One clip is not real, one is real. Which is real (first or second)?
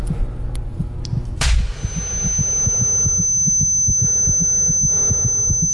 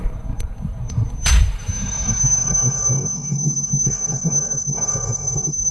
first